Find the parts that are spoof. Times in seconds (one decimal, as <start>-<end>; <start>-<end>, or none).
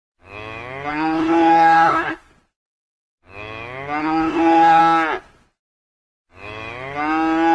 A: 0.9-2.3; 4.0-4.8